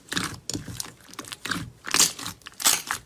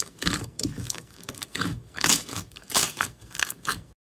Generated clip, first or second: second